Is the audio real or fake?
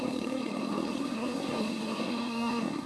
fake